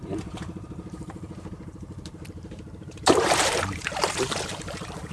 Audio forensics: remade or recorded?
remade